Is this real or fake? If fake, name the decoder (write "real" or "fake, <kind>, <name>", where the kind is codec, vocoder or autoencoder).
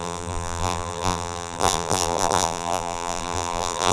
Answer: fake, vocoder, BigVGAN v2